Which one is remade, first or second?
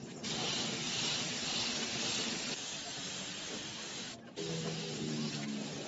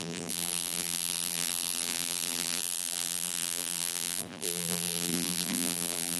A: second